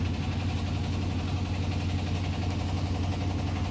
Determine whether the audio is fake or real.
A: real